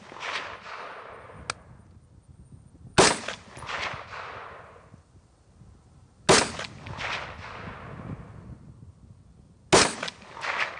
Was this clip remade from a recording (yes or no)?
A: no